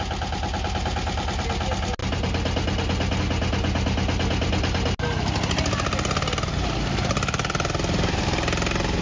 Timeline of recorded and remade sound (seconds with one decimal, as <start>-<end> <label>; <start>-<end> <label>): 0.0-9.0 recorded